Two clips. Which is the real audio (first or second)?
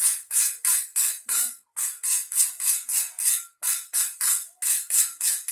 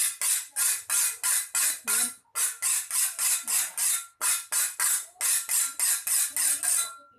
second